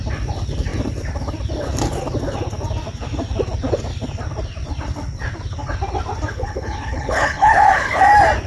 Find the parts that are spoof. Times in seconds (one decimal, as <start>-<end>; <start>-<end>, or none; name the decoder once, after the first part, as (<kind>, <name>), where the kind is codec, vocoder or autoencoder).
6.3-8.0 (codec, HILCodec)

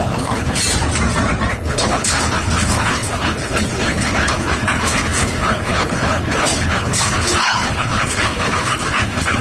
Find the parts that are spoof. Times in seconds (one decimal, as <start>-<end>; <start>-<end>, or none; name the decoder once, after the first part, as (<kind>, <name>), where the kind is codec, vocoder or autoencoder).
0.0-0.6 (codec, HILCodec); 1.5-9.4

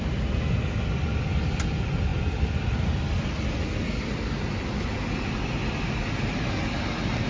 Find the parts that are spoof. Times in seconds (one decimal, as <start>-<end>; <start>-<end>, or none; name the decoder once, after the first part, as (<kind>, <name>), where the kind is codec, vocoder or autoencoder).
none